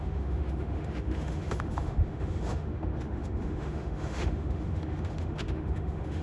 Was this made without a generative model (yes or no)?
no